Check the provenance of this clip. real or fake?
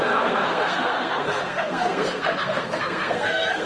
fake